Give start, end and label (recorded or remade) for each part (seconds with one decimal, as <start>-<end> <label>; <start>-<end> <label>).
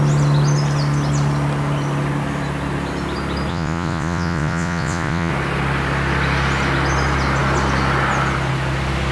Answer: 0.0-3.5 recorded; 3.5-5.3 remade; 5.3-9.1 recorded